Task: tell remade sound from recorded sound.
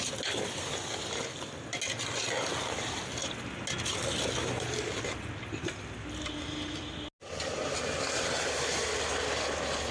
recorded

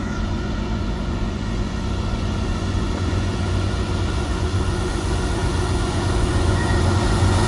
remade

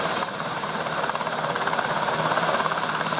remade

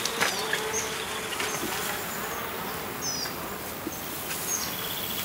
recorded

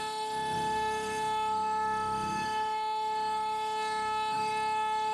remade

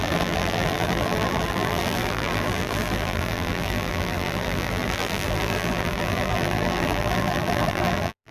remade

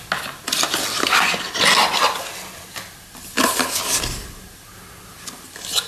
recorded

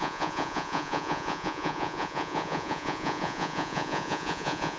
remade